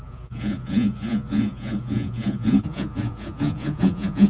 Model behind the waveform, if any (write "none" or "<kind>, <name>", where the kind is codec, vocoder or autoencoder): vocoder, Vocos